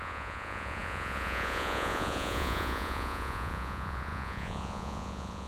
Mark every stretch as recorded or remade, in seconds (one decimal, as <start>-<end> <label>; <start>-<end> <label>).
0.0-5.5 remade